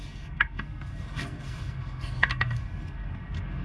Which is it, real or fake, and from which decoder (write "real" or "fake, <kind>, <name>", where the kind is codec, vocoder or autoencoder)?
fake, codec, SNAC